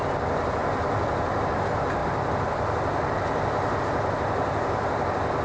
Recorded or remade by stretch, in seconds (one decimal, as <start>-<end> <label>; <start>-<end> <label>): 0.0-5.4 recorded